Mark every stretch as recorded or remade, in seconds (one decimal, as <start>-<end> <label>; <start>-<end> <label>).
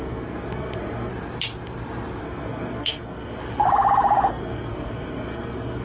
0.0-1.1 remade; 1.1-2.2 recorded; 2.2-3.4 remade; 3.4-4.3 recorded; 4.3-5.8 remade